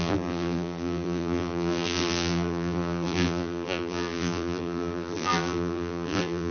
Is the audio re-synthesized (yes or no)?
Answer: yes